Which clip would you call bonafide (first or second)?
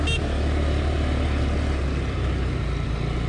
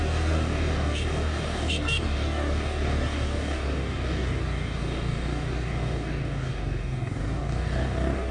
first